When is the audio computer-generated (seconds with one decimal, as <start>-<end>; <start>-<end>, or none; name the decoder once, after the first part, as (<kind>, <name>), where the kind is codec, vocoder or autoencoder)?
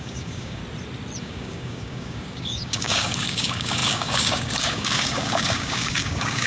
0.0-0.6 (codec, DAC); 1.2-6.5